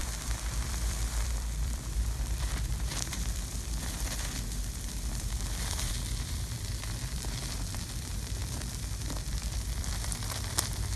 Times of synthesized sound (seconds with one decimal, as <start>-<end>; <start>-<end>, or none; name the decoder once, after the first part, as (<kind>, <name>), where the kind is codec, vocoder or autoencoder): 0.0-11.0 (vocoder, BigVGAN v2)